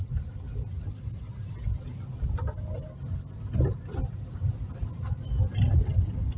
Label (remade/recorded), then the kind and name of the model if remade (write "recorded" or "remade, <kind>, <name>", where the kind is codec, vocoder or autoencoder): recorded